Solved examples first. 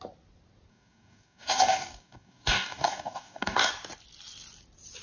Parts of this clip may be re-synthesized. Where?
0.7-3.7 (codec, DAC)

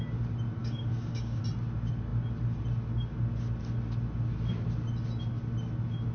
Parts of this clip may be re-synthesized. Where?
0.6-1.4 (codec, DAC)

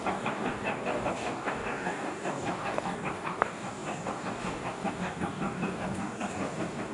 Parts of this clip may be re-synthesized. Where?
0.0-6.9 (codec, DAC)

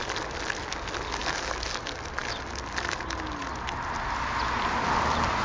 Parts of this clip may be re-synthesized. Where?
none

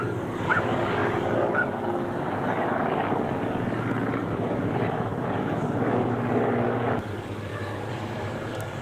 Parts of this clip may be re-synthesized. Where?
0.0-8.8 (codec, DAC)